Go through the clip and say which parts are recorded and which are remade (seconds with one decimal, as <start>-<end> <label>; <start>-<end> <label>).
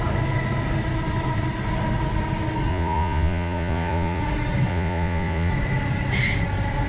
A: 0.0-2.7 recorded; 2.7-4.2 remade; 4.2-4.7 recorded; 4.7-5.5 remade; 5.5-6.9 recorded